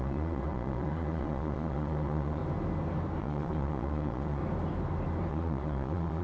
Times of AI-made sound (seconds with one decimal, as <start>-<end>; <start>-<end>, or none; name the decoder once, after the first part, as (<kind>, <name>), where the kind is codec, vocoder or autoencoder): 0.0-2.4 (vocoder, Vocos); 3.2-4.4; 5.3-6.2